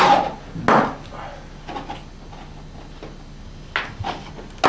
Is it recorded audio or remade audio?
recorded